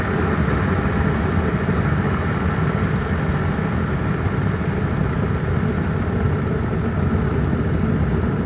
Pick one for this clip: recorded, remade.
recorded